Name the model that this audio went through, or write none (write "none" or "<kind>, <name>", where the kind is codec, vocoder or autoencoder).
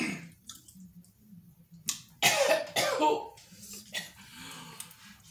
none